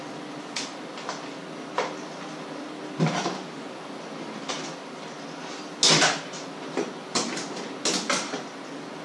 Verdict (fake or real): real